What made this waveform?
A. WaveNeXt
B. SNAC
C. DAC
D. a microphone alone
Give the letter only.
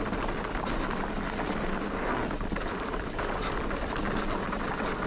D